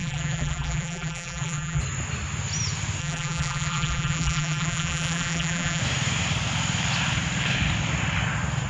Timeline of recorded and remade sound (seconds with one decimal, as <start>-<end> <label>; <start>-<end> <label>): 0.0-1.8 remade; 1.8-3.0 recorded; 3.0-5.8 remade; 5.8-8.7 recorded